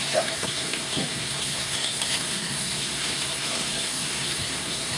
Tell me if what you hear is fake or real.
fake